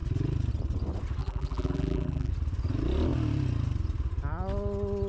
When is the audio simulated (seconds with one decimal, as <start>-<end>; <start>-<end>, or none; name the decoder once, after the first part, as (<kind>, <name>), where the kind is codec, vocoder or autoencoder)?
1.2-2.3 (vocoder, BigVGAN v2)